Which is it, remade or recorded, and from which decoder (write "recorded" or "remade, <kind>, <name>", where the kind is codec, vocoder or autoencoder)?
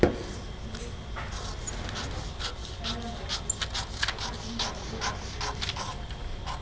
recorded